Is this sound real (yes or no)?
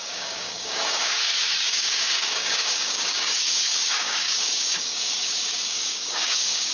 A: no